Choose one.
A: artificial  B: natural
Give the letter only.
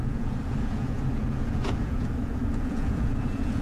A